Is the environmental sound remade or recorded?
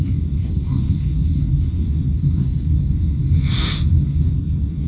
remade